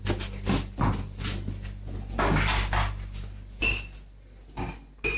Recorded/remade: recorded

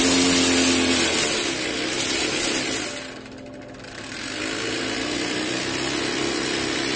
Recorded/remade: recorded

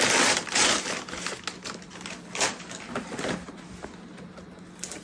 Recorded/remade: recorded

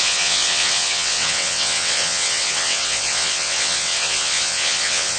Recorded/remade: remade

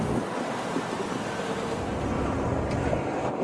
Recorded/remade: recorded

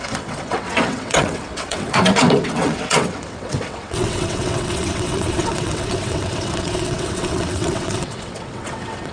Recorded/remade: remade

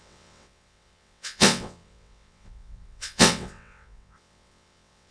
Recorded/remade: remade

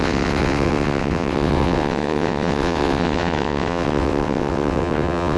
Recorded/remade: remade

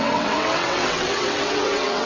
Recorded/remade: remade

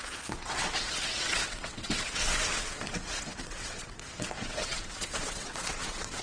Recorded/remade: remade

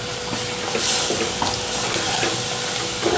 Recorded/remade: recorded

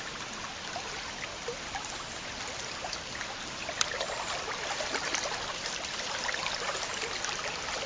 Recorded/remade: recorded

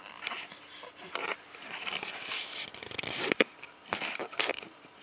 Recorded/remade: recorded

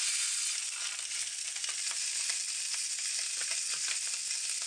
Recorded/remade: recorded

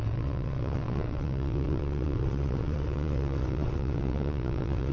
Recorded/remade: remade